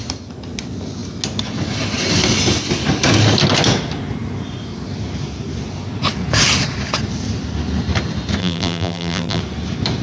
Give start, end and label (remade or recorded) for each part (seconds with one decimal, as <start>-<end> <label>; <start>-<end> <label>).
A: 0.0-8.4 recorded; 8.4-9.4 remade; 9.4-10.0 recorded